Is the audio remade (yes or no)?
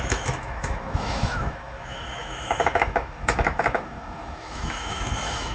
yes